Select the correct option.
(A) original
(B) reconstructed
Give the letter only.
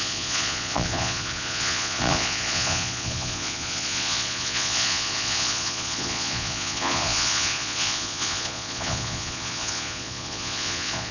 B